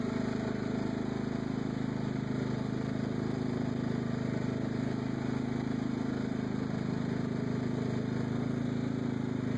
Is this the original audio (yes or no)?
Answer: yes